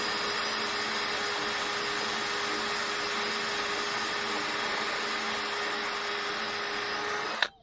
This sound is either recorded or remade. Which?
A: recorded